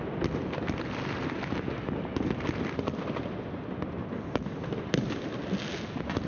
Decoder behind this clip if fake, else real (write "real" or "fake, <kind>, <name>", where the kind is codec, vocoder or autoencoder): real